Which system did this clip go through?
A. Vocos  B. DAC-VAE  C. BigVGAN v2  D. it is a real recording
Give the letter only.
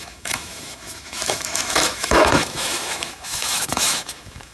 B